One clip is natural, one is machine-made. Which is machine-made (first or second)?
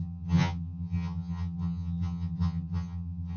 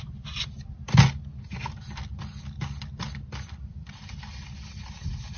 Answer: first